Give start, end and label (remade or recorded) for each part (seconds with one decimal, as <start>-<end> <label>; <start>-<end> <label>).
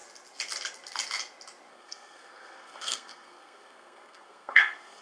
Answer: 0.0-1.7 recorded; 1.7-5.0 remade